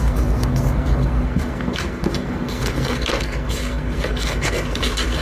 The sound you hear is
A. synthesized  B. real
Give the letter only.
A